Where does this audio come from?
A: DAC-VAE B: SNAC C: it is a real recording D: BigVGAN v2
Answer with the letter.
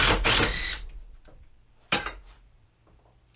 D